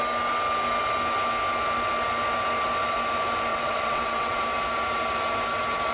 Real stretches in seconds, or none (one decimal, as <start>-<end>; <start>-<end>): 0.0-3.5; 4.4-5.9